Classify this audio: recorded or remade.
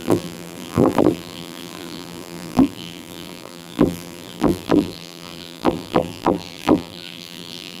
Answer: remade